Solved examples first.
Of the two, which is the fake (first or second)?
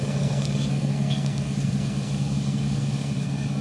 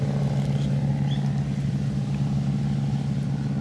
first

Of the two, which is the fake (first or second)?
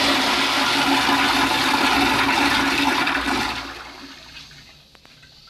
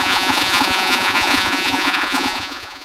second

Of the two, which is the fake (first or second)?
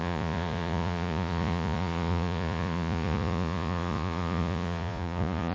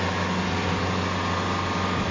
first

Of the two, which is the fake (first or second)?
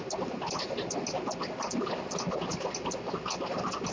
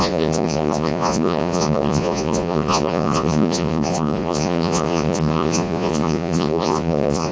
second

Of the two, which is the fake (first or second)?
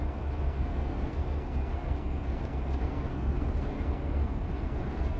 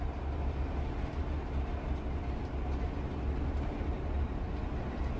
first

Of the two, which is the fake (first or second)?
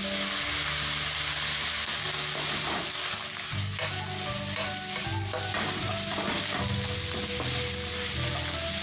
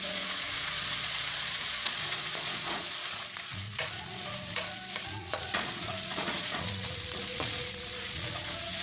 second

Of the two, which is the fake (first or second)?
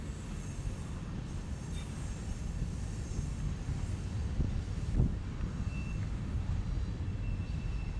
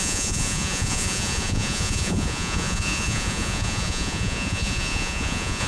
second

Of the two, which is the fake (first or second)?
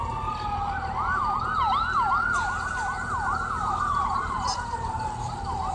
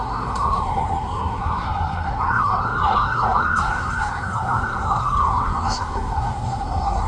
second